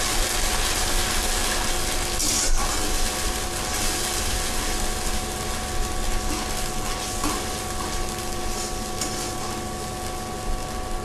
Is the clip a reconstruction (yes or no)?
no